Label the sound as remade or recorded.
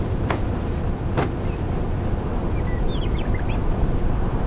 recorded